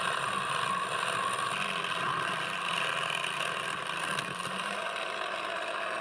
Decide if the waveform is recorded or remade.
recorded